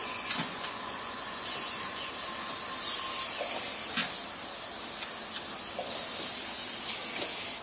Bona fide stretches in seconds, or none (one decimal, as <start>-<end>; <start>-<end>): 2.1-7.6